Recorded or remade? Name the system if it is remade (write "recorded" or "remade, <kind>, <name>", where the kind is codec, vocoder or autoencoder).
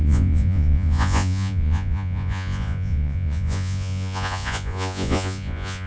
remade, vocoder, Vocos